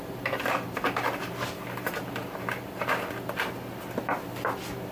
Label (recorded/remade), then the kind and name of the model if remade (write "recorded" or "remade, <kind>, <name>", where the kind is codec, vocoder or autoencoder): remade, vocoder, BigVGAN v2